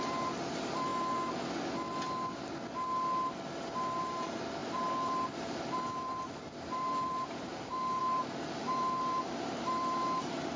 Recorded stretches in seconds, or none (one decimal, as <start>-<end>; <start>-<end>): 0.9-4.0